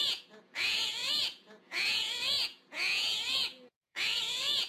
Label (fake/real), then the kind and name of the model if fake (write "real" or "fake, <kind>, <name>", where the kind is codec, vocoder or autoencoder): fake, vocoder, Vocos